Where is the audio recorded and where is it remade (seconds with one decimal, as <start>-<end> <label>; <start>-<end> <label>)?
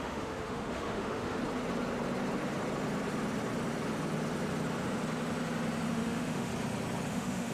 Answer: 0.0-1.4 remade; 1.4-5.9 recorded; 5.9-6.5 remade; 6.5-7.1 recorded; 7.1-7.5 remade